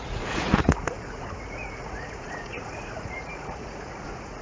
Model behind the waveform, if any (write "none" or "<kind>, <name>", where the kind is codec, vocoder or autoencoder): vocoder, Vocos